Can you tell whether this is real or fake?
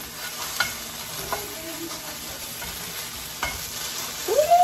real